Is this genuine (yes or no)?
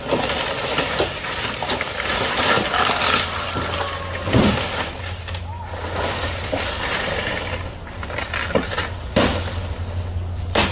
yes